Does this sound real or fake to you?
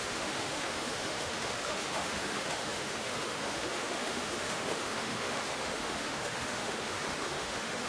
fake